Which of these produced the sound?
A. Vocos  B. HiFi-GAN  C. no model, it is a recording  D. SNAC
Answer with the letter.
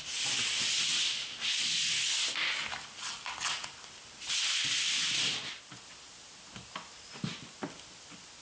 C